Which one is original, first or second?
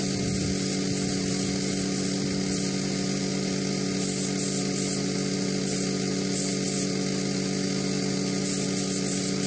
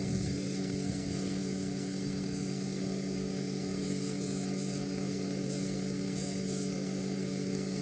first